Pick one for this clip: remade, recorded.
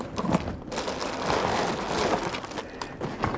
recorded